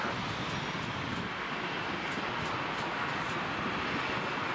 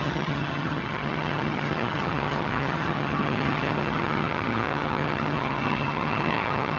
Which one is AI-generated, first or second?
second